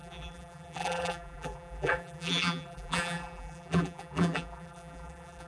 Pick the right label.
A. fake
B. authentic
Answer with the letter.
A